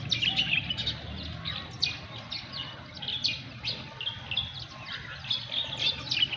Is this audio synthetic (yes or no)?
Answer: no